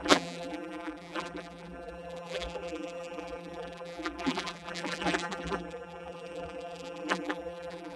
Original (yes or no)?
no